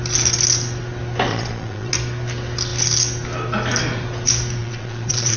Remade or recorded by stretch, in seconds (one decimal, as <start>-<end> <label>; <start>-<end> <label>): 0.0-1.3 recorded; 1.3-1.9 remade; 1.9-4.6 recorded; 4.6-5.4 remade